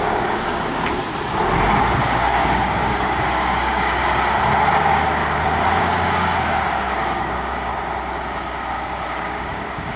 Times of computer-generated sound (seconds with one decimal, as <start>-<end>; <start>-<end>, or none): 0.0-1.0; 1.8-4.0; 4.7-5.2; 5.8-7.7; 8.7-10.0